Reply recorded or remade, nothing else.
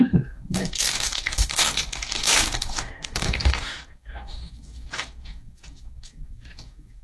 remade